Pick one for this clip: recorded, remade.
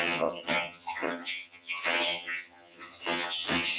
remade